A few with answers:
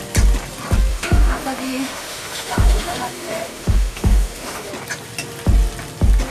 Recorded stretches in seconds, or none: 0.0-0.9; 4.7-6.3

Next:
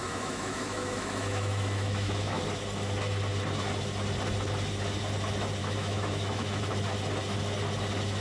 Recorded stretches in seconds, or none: 2.4-5.6; 6.6-8.2